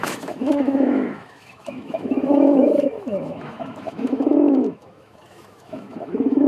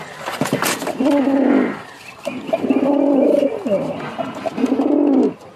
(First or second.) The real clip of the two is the second